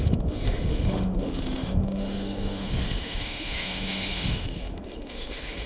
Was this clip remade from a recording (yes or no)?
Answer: yes